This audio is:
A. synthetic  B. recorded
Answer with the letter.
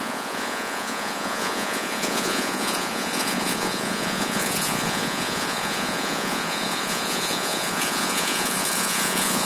A